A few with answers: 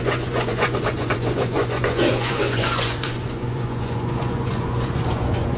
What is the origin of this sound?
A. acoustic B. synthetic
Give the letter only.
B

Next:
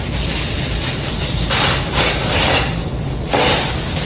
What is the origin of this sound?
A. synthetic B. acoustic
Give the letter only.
B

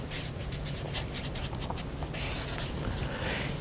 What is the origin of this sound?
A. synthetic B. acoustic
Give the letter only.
B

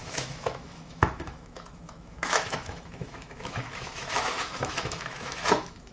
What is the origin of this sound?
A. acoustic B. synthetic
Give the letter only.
B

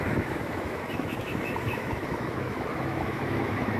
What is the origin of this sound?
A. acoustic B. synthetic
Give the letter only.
B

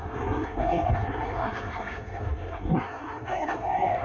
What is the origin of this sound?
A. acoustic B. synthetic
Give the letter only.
B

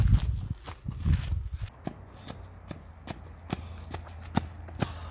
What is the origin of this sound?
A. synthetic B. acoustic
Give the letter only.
B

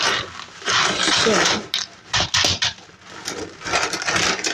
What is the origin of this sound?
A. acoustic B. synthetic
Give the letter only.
A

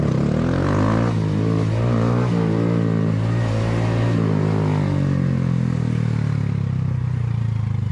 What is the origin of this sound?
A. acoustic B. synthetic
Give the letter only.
A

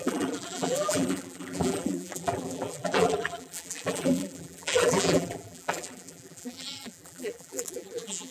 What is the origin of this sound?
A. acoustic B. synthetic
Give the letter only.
B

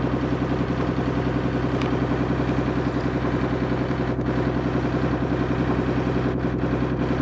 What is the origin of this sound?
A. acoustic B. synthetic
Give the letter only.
A